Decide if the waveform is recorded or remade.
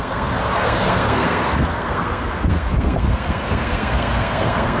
remade